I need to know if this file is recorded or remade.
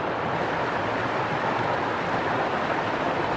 recorded